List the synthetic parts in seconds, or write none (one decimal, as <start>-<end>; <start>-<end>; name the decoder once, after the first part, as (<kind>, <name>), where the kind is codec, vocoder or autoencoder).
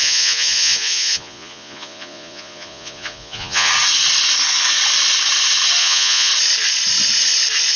0.0-3.7 (vocoder, Vocos); 5.8-6.3